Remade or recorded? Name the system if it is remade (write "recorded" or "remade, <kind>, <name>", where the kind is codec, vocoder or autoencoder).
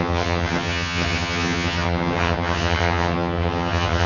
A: remade, vocoder, HiFi-GAN